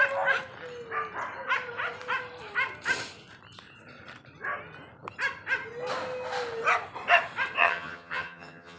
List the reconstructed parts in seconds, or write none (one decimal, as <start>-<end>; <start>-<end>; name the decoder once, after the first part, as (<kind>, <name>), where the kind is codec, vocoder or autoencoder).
7.6-8.8 (vocoder, HiFi-GAN)